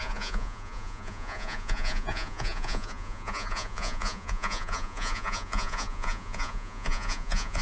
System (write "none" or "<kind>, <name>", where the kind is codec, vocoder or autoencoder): vocoder, Vocos